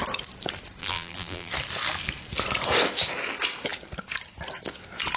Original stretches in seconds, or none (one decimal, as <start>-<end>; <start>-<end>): 0.0-0.8; 1.5-5.2

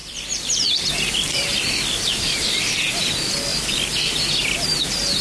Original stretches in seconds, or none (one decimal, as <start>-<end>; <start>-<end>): 3.1-5.2

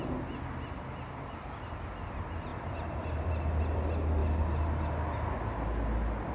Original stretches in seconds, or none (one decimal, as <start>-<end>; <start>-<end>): 0.0-6.3

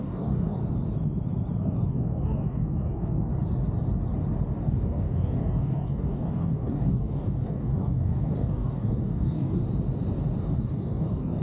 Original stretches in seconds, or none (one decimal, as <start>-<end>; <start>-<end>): 0.6-1.6; 3.3-4.6; 9.6-10.4